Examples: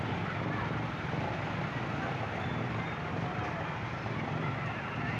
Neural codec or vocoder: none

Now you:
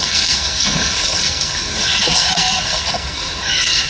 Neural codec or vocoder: codec, SNAC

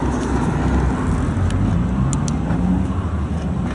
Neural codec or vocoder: none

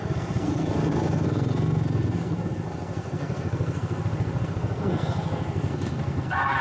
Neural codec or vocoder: codec, SNAC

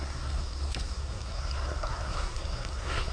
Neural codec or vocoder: codec, SNAC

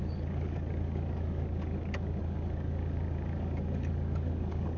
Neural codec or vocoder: codec, DAC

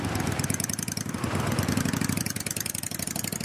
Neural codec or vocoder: none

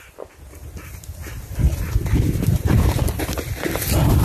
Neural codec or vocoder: none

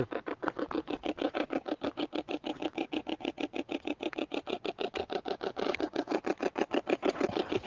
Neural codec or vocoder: vocoder, WaveNeXt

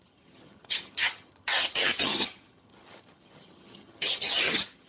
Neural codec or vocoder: vocoder, HiFi-GAN